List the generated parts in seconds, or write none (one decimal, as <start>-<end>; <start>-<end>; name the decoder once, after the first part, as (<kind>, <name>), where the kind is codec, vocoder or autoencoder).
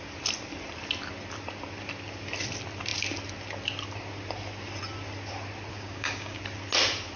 5.7-6.4 (codec, DAC)